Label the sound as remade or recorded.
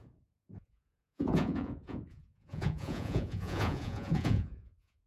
remade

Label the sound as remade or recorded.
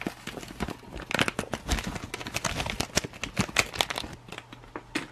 recorded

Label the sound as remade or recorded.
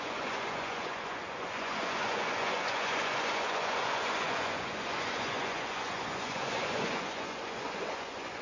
remade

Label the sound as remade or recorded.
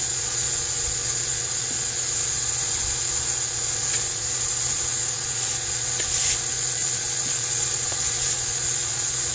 remade